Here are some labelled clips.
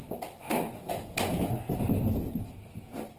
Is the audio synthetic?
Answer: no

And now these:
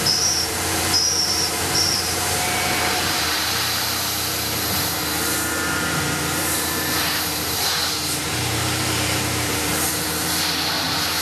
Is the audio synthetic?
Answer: yes